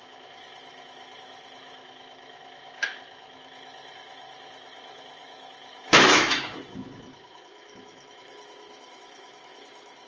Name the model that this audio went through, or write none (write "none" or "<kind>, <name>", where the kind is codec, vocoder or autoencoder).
autoencoder, DAC-VAE